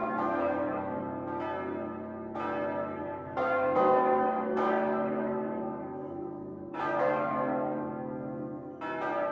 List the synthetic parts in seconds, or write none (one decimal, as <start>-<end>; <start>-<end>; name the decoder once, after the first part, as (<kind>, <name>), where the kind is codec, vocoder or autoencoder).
0.0-1.0 (codec, DAC); 3.0-7.9

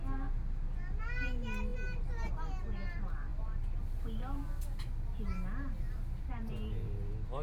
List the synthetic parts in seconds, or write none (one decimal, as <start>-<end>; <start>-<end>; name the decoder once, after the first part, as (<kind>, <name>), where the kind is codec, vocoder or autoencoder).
none

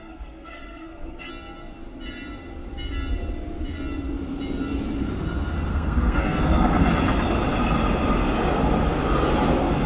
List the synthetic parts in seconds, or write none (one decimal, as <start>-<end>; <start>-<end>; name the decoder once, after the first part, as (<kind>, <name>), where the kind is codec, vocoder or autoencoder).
0.0-1.3 (codec, SNAC); 5.7-6.4

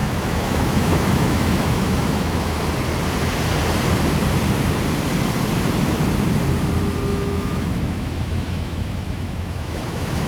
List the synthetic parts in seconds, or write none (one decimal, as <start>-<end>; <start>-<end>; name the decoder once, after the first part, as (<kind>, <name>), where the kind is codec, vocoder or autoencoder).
0.0-2.6 (autoencoder, DAC-VAE); 7.1-10.3

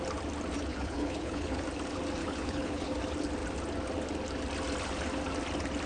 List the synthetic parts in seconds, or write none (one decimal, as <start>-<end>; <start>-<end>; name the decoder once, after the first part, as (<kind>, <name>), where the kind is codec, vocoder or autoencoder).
0.7-1.6 (codec, HILCodec); 2.2-2.9

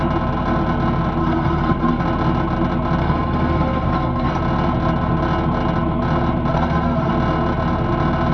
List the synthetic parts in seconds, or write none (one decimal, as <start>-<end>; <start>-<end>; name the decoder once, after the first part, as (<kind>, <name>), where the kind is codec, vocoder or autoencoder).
1.2-2.0 (codec, SNAC); 3.0-4.4; 6.5-7.1

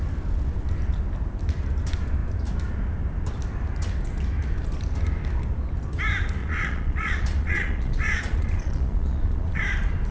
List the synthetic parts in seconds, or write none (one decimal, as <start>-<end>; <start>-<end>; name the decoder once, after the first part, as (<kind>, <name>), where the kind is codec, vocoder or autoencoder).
6.4-9.6 (vocoder, Vocos)